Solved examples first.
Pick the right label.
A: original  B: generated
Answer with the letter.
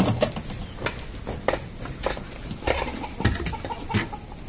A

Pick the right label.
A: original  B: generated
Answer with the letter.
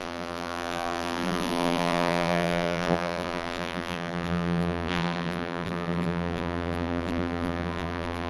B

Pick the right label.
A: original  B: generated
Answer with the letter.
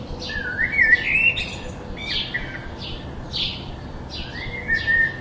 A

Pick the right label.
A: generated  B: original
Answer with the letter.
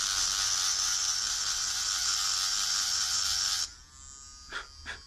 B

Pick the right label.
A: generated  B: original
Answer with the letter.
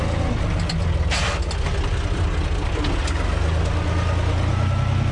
B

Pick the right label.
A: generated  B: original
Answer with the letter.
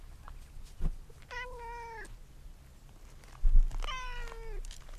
B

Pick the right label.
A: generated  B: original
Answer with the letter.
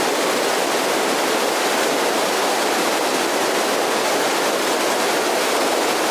B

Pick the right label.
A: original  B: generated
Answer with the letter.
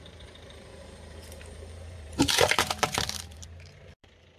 B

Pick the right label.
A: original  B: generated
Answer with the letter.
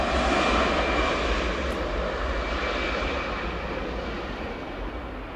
A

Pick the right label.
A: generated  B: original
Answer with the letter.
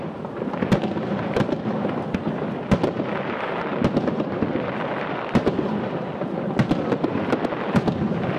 B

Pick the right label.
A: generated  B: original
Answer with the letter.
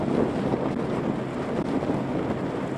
B